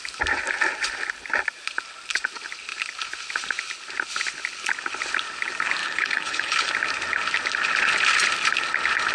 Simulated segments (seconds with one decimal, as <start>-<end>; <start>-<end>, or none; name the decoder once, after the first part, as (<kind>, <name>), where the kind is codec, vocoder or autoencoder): 5.8-6.7 (codec, HILCodec)